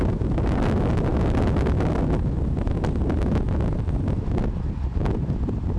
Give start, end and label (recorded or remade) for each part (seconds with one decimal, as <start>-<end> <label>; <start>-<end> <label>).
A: 0.0-5.8 recorded